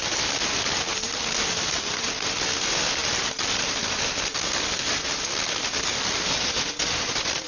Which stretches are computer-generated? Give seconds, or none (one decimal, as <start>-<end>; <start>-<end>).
none